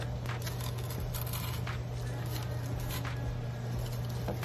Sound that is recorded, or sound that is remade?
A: recorded